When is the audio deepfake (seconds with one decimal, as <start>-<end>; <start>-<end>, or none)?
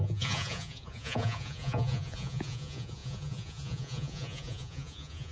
0.0-5.3